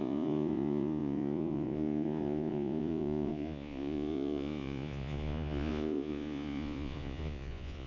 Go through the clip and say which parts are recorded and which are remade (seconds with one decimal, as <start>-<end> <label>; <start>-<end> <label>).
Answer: 0.0-7.9 remade